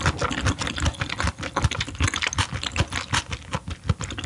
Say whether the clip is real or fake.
real